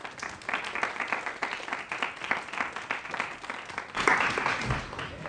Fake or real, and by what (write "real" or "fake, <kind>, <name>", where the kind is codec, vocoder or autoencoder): real